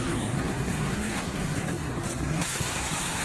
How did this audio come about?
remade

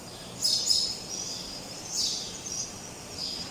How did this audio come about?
remade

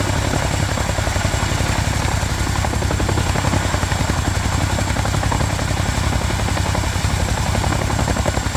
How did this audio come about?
recorded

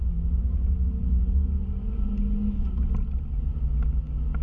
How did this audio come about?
recorded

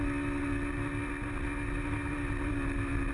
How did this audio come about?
recorded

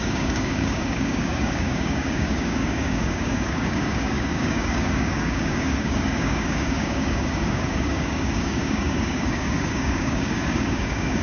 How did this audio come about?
remade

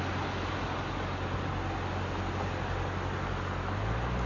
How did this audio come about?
recorded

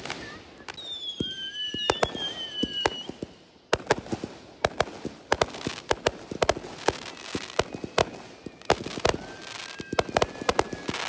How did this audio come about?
recorded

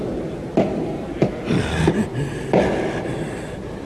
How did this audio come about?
recorded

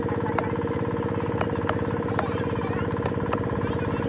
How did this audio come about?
recorded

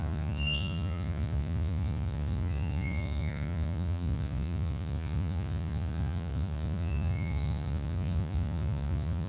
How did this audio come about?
remade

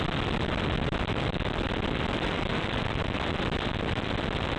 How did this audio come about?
recorded